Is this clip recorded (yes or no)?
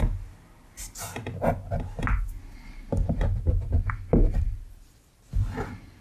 yes